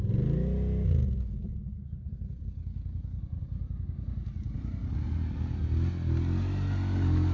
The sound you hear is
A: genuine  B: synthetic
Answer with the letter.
A